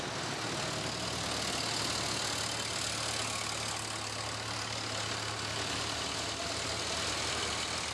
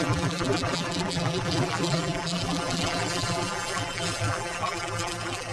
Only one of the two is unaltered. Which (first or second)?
first